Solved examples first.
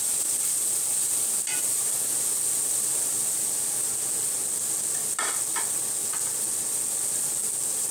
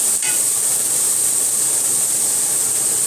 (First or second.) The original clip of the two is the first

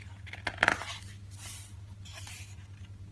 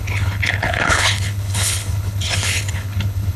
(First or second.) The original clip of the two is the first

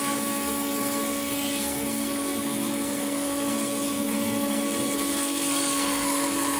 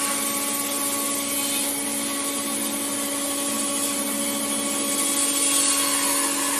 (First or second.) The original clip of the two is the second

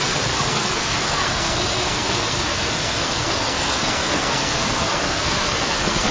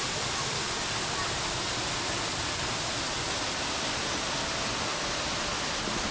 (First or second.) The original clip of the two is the second